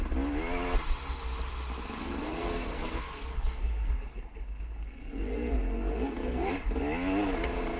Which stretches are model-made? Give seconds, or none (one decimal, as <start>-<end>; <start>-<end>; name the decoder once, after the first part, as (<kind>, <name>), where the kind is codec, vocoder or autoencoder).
2.0-6.5 (codec, SNAC)